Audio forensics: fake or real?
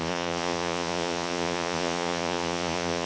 fake